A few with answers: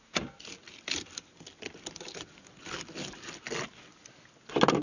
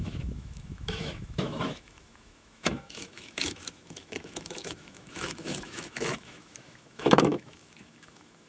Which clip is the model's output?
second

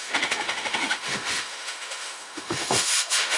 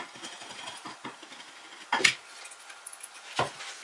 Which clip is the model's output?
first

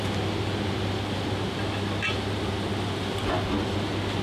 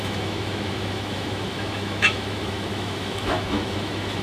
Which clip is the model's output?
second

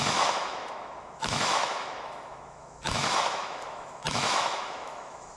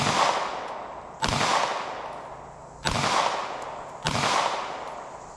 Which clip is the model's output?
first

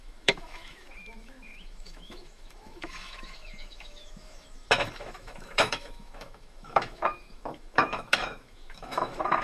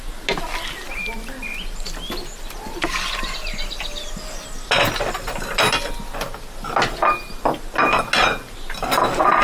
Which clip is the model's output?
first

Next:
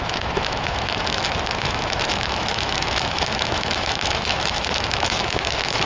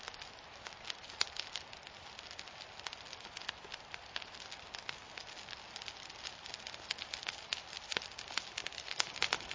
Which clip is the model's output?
first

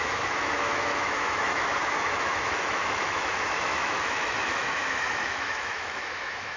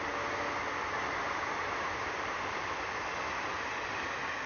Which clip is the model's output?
first